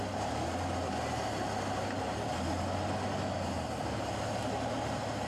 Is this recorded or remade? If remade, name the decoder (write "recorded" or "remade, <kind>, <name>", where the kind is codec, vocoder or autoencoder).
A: recorded